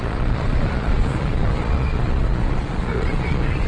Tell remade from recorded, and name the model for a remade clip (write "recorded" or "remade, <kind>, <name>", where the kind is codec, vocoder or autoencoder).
remade, vocoder, Vocos